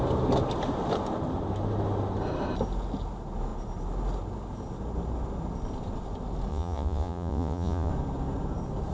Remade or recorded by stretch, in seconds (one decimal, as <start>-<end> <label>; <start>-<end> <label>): 0.0-6.5 recorded; 6.5-7.9 remade; 7.9-8.9 recorded